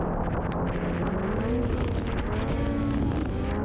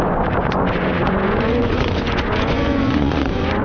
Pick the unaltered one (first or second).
first